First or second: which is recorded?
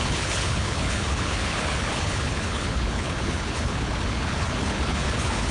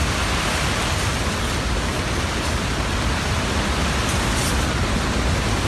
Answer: second